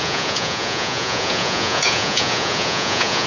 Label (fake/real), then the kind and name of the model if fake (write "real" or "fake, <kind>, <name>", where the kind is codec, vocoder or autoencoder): fake, vocoder, Vocos